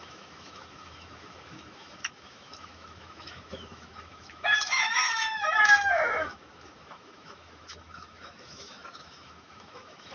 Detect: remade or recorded remade